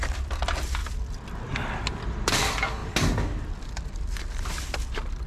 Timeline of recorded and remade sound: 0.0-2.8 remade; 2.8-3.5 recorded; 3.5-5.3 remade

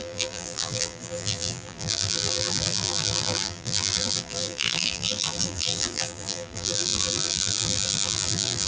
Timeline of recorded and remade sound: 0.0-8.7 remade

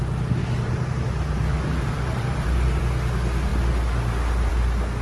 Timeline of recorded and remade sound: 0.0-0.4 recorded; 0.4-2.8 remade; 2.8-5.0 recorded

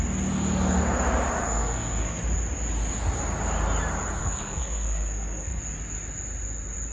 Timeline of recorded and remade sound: 0.0-1.4 recorded; 1.4-2.2 remade; 2.2-4.2 recorded; 4.2-5.6 remade; 5.6-6.9 recorded

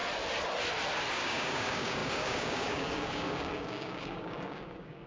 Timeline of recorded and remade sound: 0.0-1.1 recorded; 1.1-5.1 remade